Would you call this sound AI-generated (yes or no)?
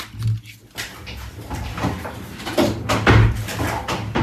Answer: no